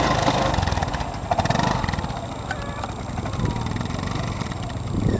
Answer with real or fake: real